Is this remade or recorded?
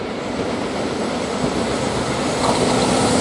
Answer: recorded